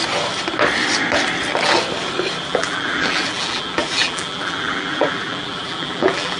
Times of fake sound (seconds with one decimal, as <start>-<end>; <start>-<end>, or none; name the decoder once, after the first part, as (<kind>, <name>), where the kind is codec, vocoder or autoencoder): 2.5-6.4 (vocoder, BigVGAN v2)